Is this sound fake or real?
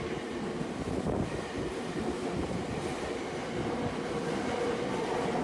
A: real